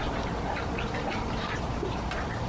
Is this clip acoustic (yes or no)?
yes